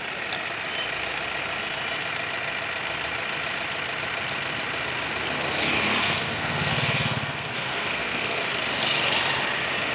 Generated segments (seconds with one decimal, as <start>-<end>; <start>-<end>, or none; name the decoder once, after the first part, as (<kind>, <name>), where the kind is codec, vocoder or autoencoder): 6.0-8.4 (codec, SNAC)